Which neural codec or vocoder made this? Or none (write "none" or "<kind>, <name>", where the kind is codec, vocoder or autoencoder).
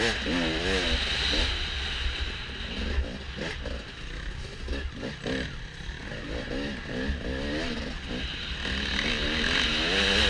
none